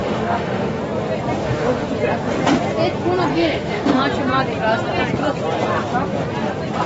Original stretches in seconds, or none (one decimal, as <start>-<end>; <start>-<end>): 0.8-1.4; 1.9-3.3; 4.0-6.9